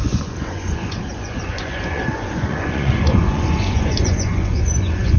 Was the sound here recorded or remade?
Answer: remade